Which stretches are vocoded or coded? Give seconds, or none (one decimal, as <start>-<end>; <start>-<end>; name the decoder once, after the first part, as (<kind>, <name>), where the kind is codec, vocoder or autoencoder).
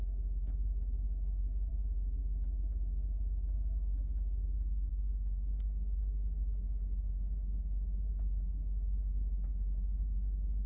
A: 0.0-1.7 (codec, HILCodec); 4.9-10.7